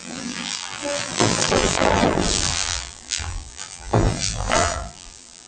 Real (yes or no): no